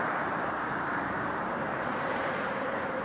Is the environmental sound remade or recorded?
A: remade